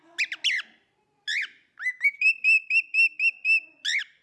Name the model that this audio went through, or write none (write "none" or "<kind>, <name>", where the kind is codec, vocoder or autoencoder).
none